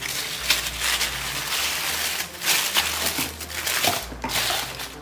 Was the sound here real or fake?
real